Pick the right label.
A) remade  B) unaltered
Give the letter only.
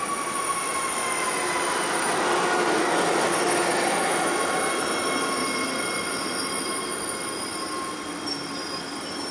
B